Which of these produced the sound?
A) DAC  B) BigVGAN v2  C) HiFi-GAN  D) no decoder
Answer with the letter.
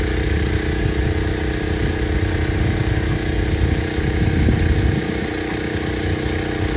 D